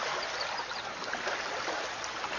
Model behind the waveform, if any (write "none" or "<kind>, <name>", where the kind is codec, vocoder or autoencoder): none